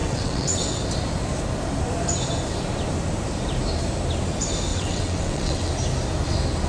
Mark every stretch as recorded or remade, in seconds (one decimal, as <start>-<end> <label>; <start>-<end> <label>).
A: 0.0-0.8 remade; 0.8-4.7 recorded; 4.7-5.7 remade; 5.7-6.7 recorded